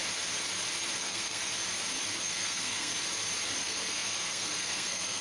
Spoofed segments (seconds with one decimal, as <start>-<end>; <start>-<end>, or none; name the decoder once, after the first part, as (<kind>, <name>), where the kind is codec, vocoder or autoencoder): 1.0-1.5 (codec, SNAC); 2.2-2.9; 3.6-5.2